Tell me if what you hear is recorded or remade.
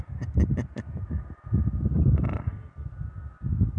recorded